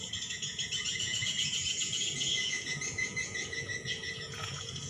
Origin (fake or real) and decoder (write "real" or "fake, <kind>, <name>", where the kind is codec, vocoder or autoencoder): fake, vocoder, Vocos